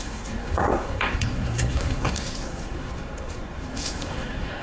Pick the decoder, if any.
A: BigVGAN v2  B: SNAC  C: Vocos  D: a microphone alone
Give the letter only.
B